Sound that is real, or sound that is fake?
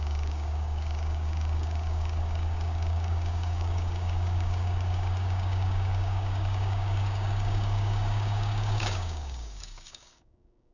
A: fake